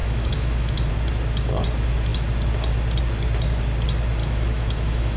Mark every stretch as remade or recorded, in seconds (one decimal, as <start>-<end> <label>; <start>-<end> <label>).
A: 0.0-0.9 remade; 0.9-4.2 recorded; 4.2-5.2 remade